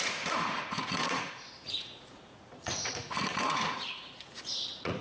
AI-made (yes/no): yes